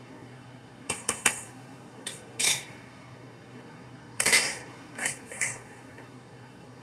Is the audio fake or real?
fake